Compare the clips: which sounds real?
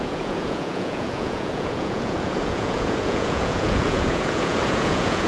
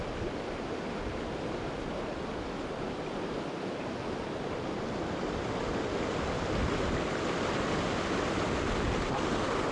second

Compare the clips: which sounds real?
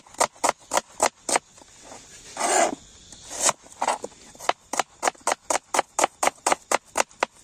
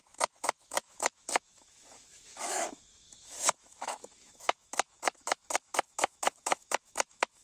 first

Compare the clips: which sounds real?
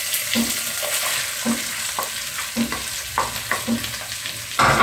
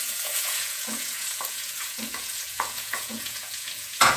first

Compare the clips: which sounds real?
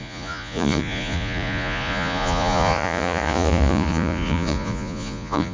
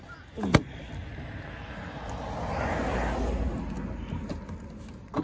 second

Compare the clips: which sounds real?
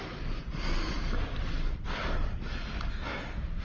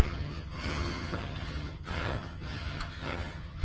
first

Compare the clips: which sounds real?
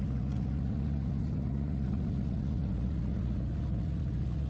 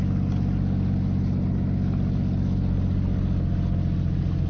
second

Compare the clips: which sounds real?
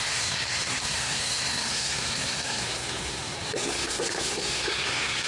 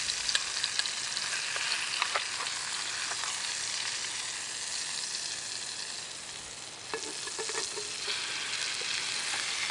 second